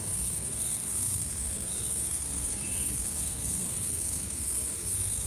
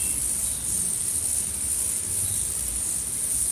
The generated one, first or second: first